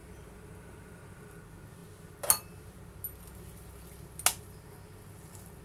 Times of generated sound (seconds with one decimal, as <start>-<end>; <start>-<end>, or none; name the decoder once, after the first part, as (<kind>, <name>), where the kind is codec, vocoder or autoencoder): none